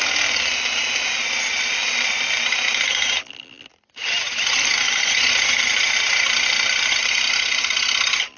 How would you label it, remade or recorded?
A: recorded